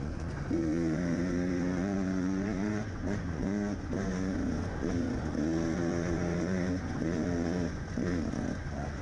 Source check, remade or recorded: remade